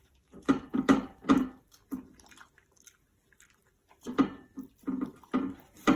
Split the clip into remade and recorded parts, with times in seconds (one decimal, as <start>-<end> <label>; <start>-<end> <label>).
0.0-0.7 recorded; 0.7-1.3 remade; 1.3-6.0 recorded